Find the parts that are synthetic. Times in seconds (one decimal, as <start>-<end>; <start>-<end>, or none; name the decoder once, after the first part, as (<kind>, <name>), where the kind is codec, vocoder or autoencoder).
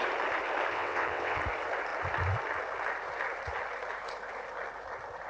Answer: 0.7-1.4 (vocoder, WaveNeXt)